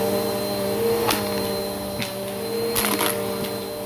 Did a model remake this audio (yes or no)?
no